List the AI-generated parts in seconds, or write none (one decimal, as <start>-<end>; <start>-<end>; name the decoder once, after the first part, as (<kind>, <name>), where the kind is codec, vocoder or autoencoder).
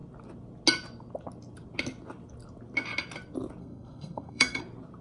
3.6-4.6 (codec, SNAC)